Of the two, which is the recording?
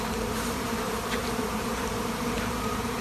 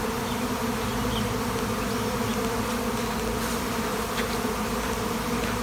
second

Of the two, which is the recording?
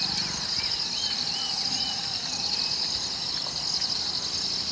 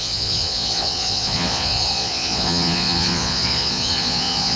first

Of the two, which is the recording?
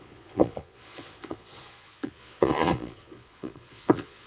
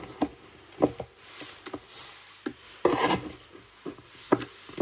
second